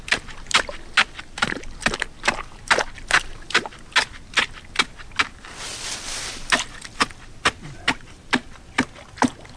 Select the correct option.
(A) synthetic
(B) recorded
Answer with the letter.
B